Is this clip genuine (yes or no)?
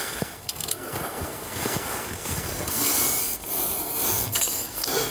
no